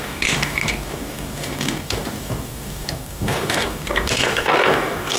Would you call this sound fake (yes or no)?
yes